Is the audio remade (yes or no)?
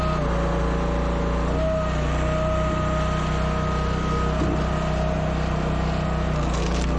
no